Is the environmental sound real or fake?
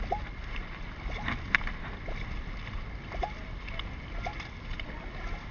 real